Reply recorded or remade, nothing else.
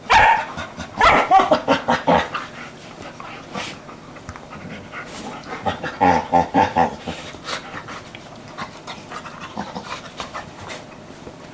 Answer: remade